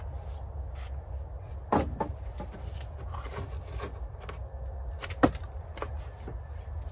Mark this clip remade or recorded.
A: recorded